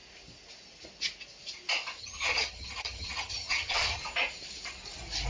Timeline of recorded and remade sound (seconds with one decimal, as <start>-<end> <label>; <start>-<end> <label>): 0.0-2.0 recorded; 2.0-4.0 remade; 4.0-5.3 recorded